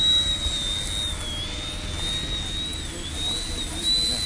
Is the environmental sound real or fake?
real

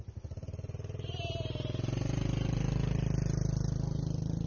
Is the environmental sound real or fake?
fake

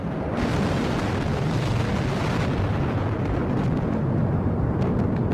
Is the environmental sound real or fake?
fake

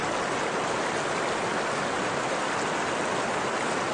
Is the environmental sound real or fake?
real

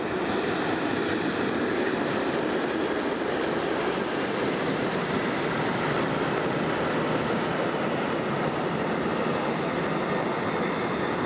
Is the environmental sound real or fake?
fake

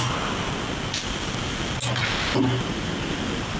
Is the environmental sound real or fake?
real